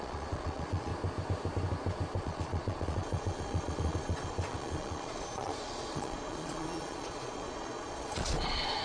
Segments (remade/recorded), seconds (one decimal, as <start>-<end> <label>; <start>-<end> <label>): 0.0-0.9 remade; 0.9-2.2 recorded; 2.2-8.8 remade